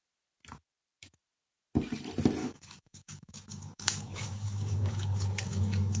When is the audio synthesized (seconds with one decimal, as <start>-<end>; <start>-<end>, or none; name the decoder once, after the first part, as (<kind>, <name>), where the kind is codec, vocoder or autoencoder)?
2.4-6.0 (codec, DAC)

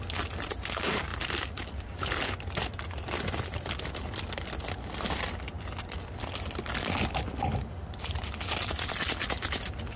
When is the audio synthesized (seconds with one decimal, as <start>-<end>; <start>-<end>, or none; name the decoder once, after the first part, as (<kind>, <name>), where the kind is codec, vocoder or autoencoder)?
none

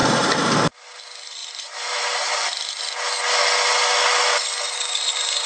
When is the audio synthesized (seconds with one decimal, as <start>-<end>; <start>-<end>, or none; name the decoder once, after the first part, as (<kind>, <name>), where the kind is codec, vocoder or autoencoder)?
0.0-0.6 (vocoder, BigVGAN v2); 1.4-2.7

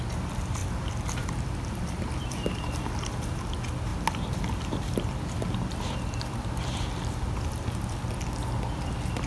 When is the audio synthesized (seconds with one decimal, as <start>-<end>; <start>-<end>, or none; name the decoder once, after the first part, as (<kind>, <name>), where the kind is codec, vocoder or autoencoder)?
0.6-2.7 (vocoder, BigVGAN v2); 3.9-7.0

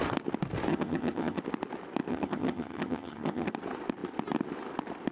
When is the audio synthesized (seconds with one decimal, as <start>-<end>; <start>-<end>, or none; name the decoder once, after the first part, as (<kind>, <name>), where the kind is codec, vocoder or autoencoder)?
0.7-1.4 (vocoder, HiFi-GAN); 2.1-3.5